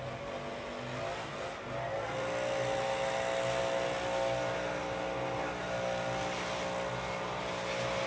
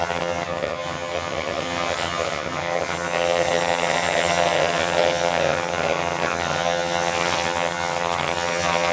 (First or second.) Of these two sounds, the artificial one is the second